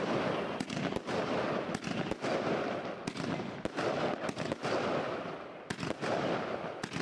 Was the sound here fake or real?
real